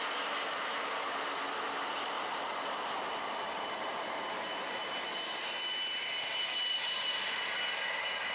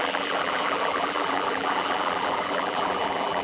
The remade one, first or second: second